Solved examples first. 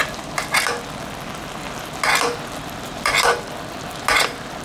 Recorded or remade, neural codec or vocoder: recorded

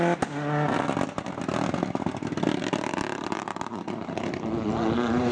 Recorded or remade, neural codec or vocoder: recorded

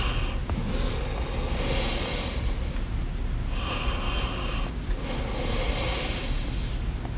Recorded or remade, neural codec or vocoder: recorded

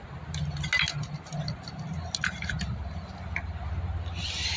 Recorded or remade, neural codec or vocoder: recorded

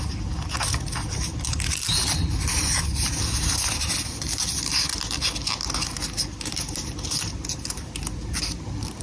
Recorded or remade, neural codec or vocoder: recorded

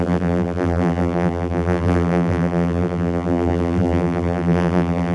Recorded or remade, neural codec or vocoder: remade, vocoder, BigVGAN v2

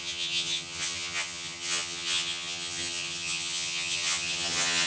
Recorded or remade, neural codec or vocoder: remade, vocoder, HiFi-GAN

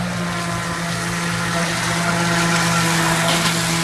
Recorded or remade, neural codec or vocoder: recorded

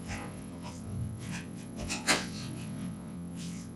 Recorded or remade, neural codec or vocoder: remade, vocoder, WaveNeXt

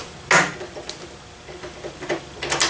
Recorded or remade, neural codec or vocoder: recorded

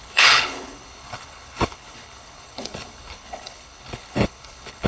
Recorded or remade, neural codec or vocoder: remade, codec, HILCodec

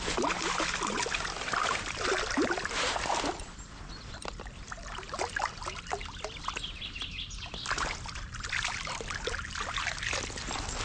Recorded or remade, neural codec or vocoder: recorded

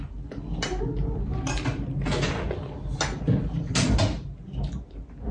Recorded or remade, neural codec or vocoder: recorded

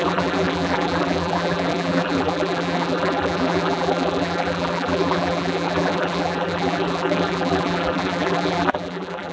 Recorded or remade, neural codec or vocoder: remade, vocoder, BigVGAN v2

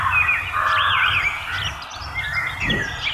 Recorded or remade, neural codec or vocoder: recorded